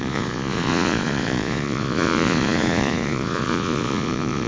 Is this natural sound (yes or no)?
no